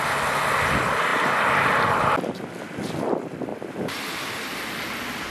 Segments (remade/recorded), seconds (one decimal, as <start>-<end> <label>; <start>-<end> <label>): 0.0-5.3 recorded